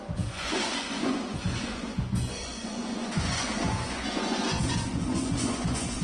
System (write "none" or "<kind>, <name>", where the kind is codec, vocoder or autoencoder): vocoder, Vocos